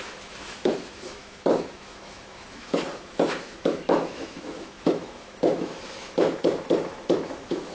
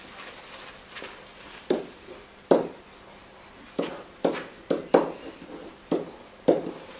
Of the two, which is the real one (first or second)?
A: second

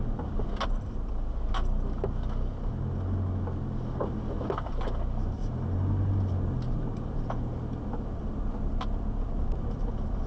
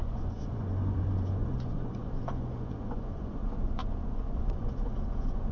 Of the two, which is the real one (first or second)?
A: first